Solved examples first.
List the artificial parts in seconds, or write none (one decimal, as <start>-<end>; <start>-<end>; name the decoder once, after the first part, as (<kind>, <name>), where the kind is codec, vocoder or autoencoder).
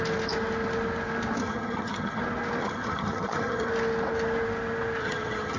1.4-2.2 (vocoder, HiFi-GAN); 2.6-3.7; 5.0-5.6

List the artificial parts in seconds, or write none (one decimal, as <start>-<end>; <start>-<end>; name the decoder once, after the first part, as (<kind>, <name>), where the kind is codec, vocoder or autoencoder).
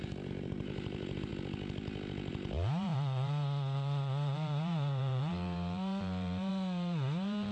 0.0-1.3 (vocoder, BigVGAN v2); 2.3-7.5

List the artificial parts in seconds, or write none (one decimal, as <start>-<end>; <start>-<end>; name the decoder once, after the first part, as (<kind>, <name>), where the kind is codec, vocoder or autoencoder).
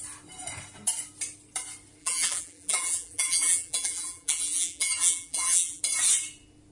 2.0-5.8 (vocoder, BigVGAN v2)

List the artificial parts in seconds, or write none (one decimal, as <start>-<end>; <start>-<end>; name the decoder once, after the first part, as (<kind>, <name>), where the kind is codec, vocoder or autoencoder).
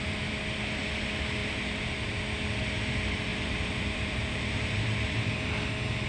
1.4-2.2 (vocoder, BigVGAN v2); 3.3-5.5